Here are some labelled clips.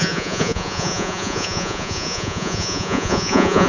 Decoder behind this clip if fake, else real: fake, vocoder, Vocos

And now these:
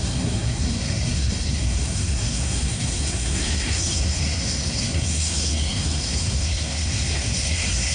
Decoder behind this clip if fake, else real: fake, codec, SNAC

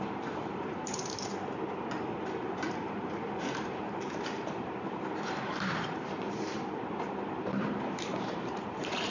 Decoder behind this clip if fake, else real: fake, vocoder, BigVGAN v2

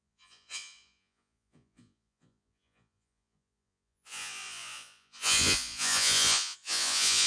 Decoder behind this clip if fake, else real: fake, vocoder, Vocos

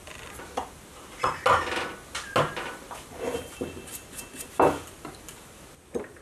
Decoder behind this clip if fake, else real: real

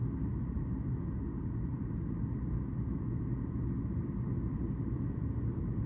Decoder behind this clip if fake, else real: real